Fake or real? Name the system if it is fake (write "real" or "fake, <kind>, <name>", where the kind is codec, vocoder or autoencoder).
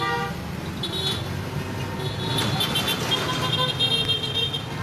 real